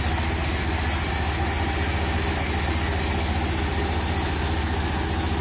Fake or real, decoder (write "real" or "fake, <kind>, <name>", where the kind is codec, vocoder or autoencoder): real